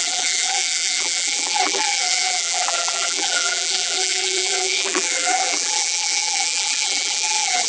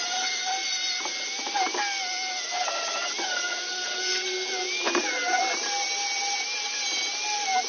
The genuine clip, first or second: second